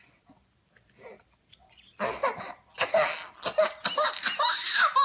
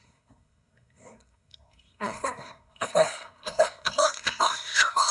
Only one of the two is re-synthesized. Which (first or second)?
second